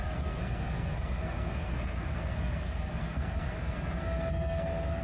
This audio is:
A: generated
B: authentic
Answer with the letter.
A